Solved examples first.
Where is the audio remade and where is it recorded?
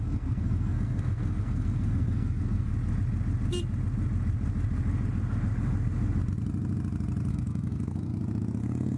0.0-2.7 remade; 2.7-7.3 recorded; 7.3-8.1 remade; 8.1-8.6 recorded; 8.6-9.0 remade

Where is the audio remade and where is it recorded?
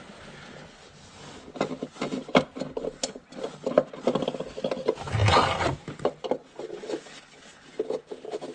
0.0-8.5 recorded